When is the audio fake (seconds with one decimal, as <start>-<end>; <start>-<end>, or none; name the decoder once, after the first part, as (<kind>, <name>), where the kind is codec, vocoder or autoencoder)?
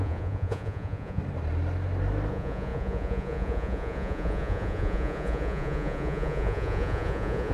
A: 0.0-1.2 (vocoder, Vocos); 2.3-7.5